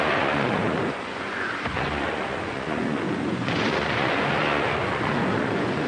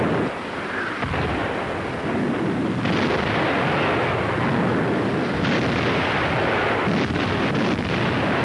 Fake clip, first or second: first